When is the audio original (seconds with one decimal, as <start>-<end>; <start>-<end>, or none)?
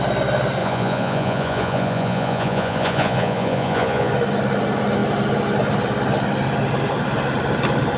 0.0-0.6; 4.1-8.0